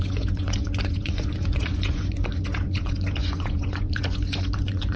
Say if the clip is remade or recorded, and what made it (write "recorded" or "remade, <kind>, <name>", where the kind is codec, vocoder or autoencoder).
remade, vocoder, Vocos